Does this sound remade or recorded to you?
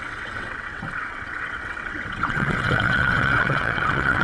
remade